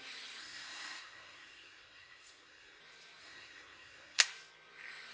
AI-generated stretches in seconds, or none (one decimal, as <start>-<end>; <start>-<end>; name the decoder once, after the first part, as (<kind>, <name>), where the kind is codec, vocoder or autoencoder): 0.4-2.8 (codec, SNAC); 3.2-4.2